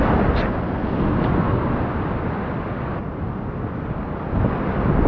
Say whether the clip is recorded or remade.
recorded